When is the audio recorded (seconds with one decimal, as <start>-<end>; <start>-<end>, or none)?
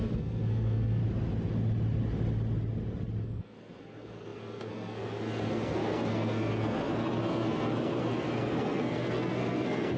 1.0-3.2